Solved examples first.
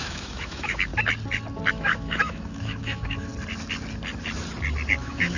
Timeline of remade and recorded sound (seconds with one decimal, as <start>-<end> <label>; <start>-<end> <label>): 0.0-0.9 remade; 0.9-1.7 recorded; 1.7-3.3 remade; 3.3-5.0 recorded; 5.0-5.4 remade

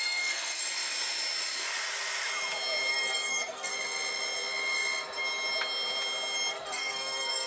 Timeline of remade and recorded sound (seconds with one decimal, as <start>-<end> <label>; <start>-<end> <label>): 0.0-0.6 remade; 0.6-2.9 recorded; 2.9-3.7 remade; 3.7-6.5 recorded; 6.5-7.5 remade

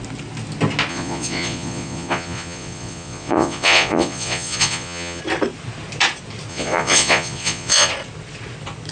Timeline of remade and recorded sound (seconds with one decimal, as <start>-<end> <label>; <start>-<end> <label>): 0.0-0.9 recorded; 0.9-5.2 remade; 5.2-6.5 recorded; 6.5-7.9 remade; 7.9-8.9 recorded

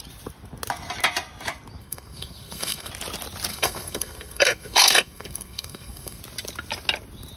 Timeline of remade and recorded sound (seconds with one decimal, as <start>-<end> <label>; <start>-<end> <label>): 0.0-1.8 recorded; 1.8-2.9 remade; 2.9-3.5 recorded; 3.5-6.2 remade; 6.2-7.4 recorded

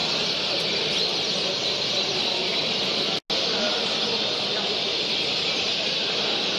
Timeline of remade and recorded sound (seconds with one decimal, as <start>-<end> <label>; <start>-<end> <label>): 0.0-6.6 recorded

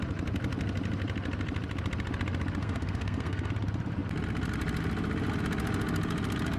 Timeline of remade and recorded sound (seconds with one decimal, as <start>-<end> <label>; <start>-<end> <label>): 0.0-2.6 recorded; 2.6-3.5 remade; 3.5-6.6 recorded

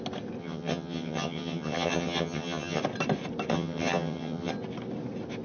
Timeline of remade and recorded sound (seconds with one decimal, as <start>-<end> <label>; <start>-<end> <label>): 0.0-0.4 recorded; 0.4-2.8 remade; 2.8-3.5 recorded; 3.5-4.5 remade; 4.5-5.4 recorded

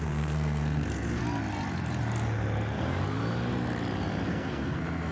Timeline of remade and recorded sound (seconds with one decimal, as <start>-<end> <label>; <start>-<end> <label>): 0.0-1.2 remade; 1.2-4.3 recorded; 4.3-5.1 remade